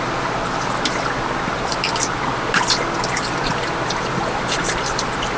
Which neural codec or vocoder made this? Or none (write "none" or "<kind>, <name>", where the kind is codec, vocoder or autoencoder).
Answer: vocoder, BigVGAN v2